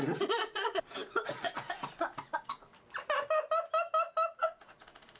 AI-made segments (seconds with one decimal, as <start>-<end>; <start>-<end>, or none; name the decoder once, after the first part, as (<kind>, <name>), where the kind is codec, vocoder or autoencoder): 0.0-2.7 (vocoder, Vocos); 4.4-5.2